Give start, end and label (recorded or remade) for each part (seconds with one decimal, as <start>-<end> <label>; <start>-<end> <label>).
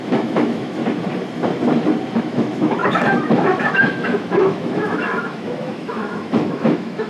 0.0-0.8 remade; 0.8-2.2 recorded; 2.2-7.1 remade